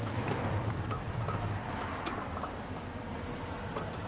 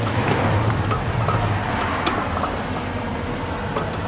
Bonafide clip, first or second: second